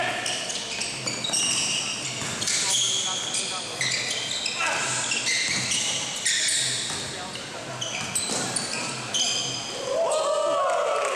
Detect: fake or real real